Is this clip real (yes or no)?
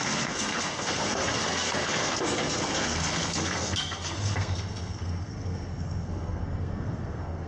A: no